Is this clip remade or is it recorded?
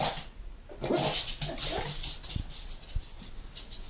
recorded